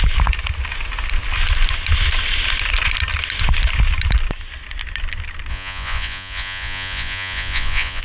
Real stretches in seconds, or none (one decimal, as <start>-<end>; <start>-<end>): 0.0-5.5